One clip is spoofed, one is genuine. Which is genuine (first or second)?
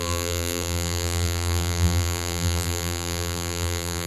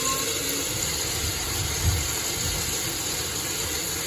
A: second